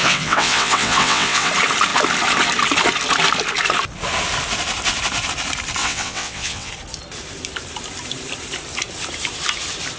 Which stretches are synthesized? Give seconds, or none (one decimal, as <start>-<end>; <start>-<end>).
0.0-1.5; 5.8-6.7